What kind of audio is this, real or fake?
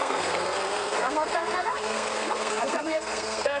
fake